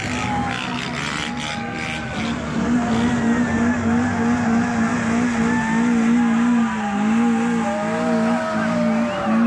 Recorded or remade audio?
recorded